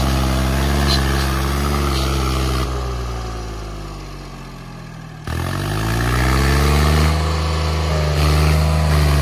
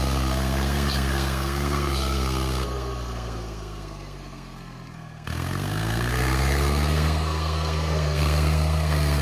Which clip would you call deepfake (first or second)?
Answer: second